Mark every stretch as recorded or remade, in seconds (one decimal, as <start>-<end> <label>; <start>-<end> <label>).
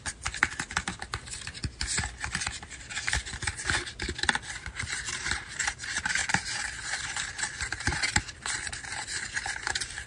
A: 0.0-10.1 recorded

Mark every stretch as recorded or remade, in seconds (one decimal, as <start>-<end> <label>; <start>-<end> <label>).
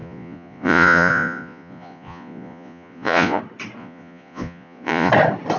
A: 0.0-3.4 remade; 3.4-3.8 recorded; 3.8-5.1 remade; 5.1-5.6 recorded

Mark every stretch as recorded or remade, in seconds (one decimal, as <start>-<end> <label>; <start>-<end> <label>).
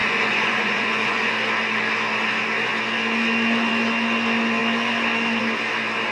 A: 0.0-1.3 remade; 1.3-6.1 recorded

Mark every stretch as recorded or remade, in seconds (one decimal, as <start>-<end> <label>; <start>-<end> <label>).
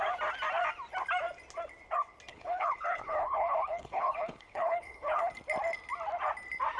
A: 0.0-2.3 recorded; 2.3-5.3 remade; 5.3-6.8 recorded